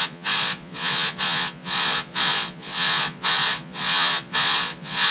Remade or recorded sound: remade